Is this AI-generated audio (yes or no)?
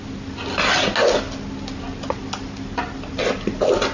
no